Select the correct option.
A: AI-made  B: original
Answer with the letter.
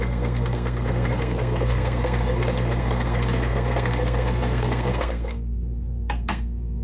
A